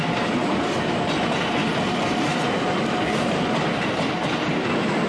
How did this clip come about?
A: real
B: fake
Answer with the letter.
A